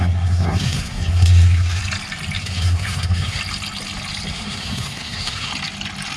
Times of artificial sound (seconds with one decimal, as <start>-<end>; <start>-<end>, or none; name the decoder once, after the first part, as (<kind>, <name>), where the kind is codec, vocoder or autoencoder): 0.0-1.8 (codec, SNAC); 2.4-3.4; 4.3-5.5